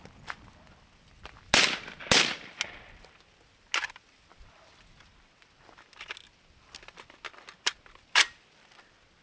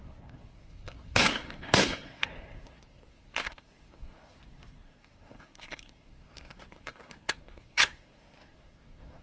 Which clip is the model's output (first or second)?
second